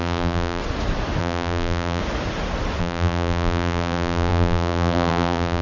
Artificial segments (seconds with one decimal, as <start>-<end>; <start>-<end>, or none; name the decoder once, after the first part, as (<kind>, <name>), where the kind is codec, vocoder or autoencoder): 0.0-0.6 (vocoder, BigVGAN v2); 1.2-2.0; 2.8-5.6